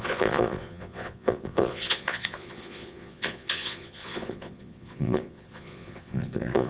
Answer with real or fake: fake